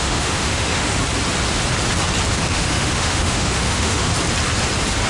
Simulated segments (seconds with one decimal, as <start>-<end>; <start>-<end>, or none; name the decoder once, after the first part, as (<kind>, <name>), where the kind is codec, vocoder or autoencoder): 0.0-0.9 (autoencoder, DAC-VAE); 2.3-4.1